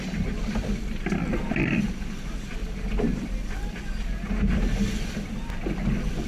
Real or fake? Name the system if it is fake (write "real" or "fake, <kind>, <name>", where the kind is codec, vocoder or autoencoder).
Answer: real